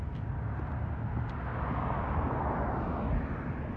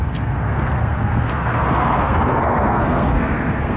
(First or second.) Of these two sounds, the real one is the first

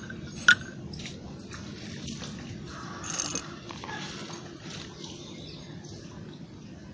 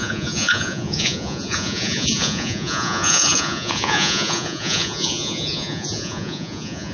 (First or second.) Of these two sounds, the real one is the first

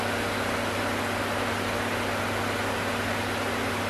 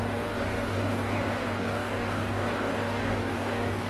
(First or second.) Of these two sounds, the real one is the first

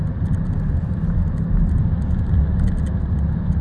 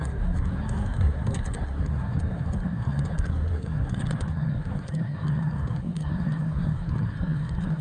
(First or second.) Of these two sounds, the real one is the first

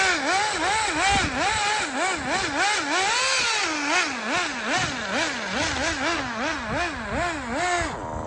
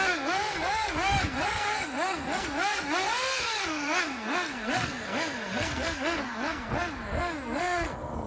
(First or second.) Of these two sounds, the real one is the first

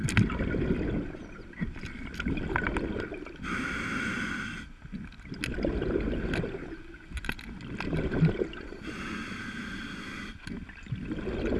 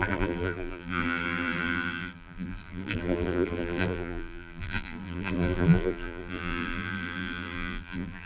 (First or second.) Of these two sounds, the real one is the first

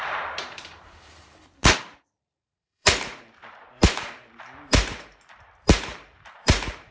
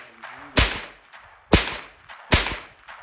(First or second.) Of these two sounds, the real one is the second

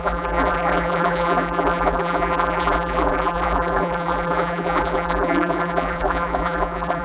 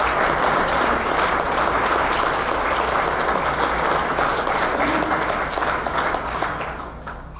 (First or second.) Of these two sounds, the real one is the second